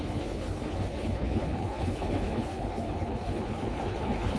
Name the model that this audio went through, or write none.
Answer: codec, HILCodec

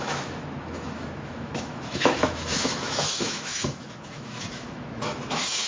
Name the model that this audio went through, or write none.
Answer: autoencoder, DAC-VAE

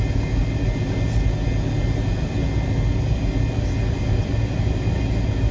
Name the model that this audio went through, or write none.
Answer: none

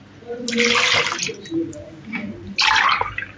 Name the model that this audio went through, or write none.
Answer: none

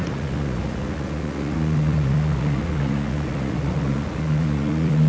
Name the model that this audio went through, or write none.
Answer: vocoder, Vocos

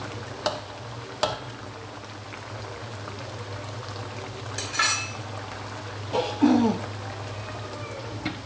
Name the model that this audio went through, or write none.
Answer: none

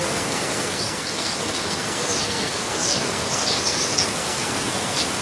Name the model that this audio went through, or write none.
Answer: codec, SNAC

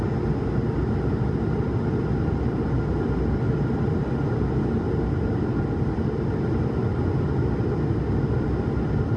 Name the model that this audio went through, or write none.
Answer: none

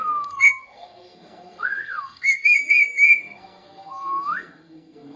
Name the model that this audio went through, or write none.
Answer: codec, SNAC